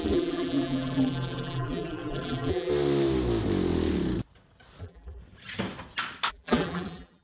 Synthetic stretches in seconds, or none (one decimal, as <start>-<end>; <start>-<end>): 0.0-2.7; 4.8-5.2; 6.3-7.2